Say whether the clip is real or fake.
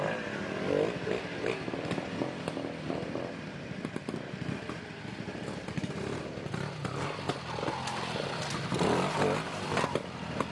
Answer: real